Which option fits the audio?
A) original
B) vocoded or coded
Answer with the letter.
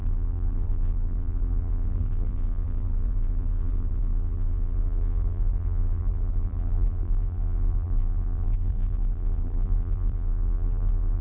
B